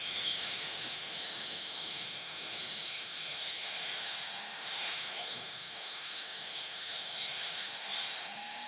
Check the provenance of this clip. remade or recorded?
remade